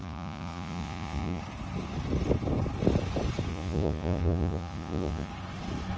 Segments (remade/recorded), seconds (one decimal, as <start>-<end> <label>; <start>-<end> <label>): 0.0-1.4 remade; 1.4-3.5 recorded; 3.5-5.3 remade; 5.3-6.0 recorded